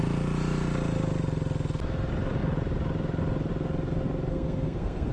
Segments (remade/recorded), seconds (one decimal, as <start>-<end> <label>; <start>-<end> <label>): 0.0-4.3 recorded; 4.3-5.1 remade